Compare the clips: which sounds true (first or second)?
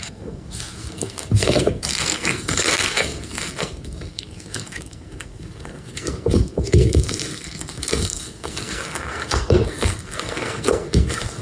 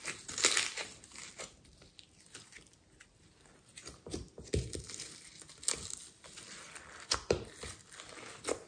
second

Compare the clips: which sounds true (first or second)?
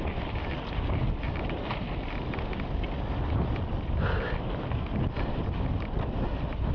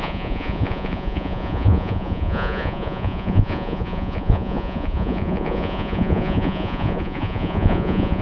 first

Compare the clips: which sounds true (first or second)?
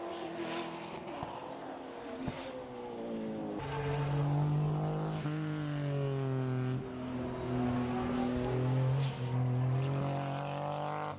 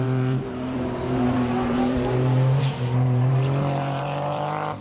first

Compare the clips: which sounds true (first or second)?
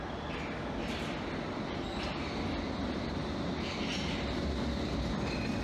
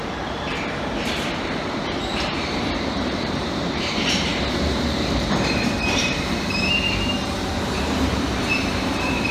first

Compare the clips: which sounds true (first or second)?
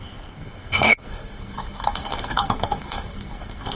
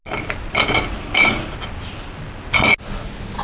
second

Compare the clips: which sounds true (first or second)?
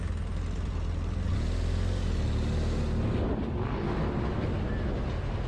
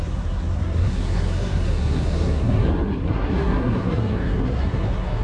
first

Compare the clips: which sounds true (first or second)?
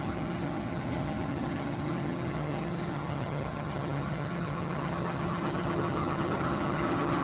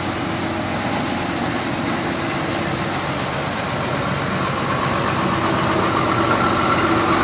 second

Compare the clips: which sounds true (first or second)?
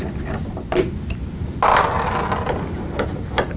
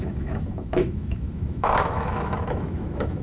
first